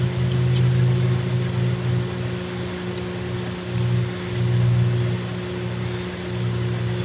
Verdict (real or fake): real